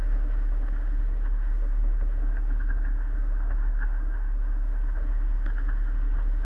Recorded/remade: remade